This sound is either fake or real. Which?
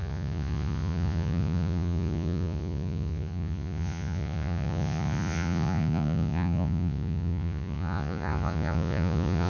fake